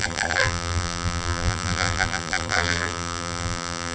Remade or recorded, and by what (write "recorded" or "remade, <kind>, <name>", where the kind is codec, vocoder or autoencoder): remade, vocoder, BigVGAN v2